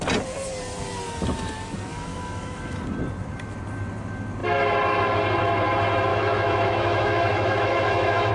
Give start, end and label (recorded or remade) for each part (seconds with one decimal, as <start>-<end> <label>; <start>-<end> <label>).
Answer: 0.0-1.9 recorded; 1.9-2.8 remade; 2.8-6.1 recorded; 6.1-8.3 remade